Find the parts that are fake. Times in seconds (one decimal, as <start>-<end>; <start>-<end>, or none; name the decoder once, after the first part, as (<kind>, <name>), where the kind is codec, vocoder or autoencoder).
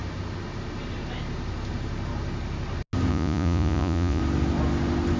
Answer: 3.1-4.2 (vocoder, Vocos)